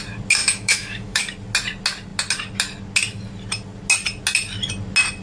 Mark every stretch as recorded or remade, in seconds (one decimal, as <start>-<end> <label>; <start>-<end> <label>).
0.0-0.4 recorded; 0.4-1.2 remade; 1.2-5.2 recorded